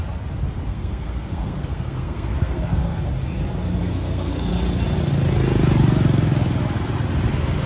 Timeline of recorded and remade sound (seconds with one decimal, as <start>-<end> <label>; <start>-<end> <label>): 0.0-0.7 recorded; 0.7-3.1 remade; 3.1-3.8 recorded; 3.8-4.5 remade; 4.5-7.7 recorded